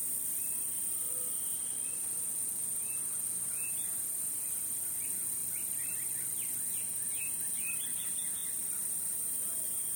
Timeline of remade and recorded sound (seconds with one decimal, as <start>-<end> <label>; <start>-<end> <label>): 0.0-2.1 recorded; 2.1-5.4 remade; 5.4-6.6 recorded; 6.6-8.4 remade; 8.4-9.2 recorded; 9.2-10.0 remade